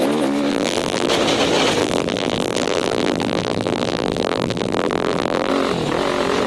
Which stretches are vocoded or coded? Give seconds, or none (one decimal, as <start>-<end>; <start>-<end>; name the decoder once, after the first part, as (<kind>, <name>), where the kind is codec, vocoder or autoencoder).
0.5-1.1 (vocoder, BigVGAN v2); 1.8-5.5